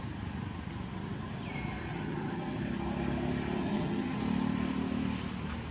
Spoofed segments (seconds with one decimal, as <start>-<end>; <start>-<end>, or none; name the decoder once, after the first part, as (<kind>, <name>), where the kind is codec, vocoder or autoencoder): 1.9-2.6 (vocoder, HiFi-GAN); 3.6-4.2